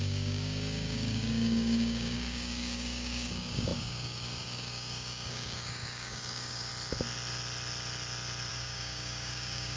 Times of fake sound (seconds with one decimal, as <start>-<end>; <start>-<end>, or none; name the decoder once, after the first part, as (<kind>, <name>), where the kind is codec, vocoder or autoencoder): 0.0-6.7 (codec, DAC); 8.5-9.8